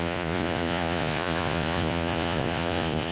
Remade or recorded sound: remade